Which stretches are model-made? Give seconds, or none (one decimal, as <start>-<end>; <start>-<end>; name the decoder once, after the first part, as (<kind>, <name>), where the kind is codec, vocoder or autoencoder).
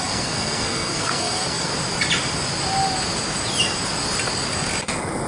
0.0-1.7 (codec, SNAC)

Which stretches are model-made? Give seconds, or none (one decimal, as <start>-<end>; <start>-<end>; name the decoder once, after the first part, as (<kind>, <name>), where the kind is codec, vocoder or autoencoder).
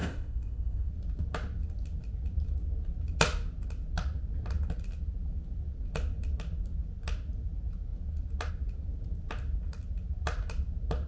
0.0-0.9 (codec, ZipCodec)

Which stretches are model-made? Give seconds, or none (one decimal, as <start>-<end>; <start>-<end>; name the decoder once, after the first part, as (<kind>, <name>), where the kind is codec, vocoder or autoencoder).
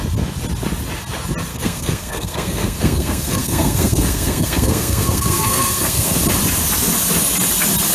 1.5-6.2 (codec, SNAC)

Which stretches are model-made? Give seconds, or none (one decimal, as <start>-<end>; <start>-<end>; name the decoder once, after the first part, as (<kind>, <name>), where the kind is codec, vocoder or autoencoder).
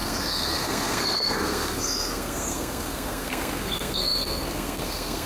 0.0-5.3 (codec, SNAC)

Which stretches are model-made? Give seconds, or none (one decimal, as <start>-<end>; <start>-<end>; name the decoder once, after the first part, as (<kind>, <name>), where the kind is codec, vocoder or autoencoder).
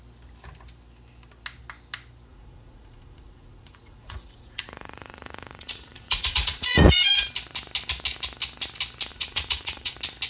2.3-7.3 (vocoder, Vocos); 9.1-9.9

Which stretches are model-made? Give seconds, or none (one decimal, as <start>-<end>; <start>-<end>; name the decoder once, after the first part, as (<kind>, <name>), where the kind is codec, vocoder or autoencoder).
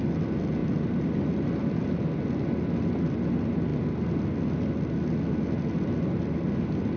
none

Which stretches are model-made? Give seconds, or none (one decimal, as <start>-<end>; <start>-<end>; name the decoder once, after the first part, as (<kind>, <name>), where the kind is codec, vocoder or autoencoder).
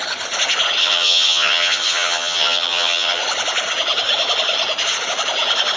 0.8-3.2 (vocoder, HiFi-GAN)